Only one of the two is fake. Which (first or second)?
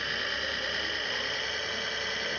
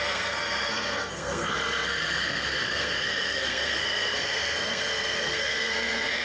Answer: second